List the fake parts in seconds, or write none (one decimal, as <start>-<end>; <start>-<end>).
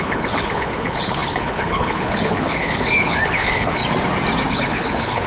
0.0-3.8; 4.5-5.3